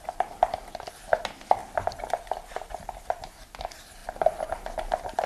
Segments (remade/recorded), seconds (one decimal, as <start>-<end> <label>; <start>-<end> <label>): 0.0-5.3 recorded

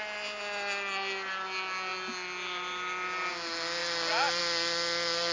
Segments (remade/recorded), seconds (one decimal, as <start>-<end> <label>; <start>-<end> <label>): 0.0-5.3 recorded

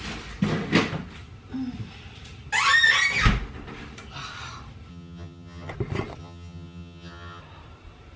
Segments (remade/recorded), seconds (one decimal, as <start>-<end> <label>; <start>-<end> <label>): 0.0-4.9 recorded; 4.9-5.7 remade; 5.7-6.2 recorded; 6.2-7.4 remade; 7.4-8.2 recorded

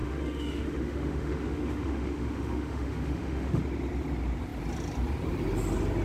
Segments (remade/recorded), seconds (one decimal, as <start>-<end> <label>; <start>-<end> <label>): 0.0-3.6 remade; 3.6-6.0 recorded